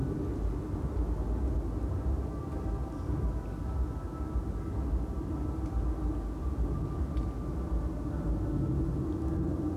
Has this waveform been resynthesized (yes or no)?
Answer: no